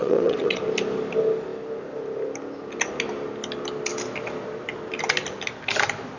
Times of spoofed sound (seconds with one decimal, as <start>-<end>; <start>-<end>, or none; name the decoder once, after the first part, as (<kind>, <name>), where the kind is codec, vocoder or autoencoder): 0.0-0.6 (vocoder, WaveNeXt)